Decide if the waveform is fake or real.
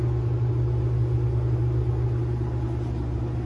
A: real